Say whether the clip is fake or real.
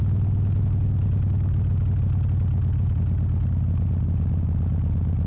real